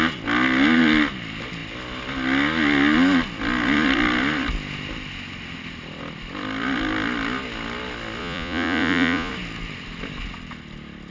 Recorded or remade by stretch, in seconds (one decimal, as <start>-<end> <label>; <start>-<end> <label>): 0.0-8.2 recorded; 8.2-9.3 remade; 9.3-11.1 recorded